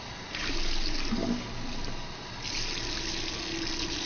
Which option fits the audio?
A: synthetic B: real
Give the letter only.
B